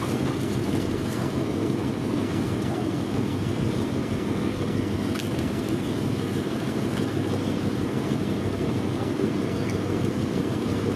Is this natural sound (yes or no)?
no